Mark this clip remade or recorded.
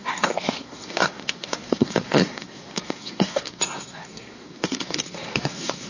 remade